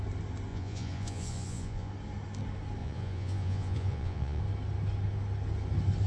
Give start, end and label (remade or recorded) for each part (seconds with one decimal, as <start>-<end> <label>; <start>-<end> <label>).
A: 0.0-0.5 recorded; 0.5-1.9 remade; 1.9-2.8 recorded; 2.8-4.4 remade; 4.4-6.1 recorded